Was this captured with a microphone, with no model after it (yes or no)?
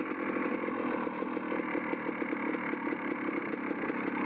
yes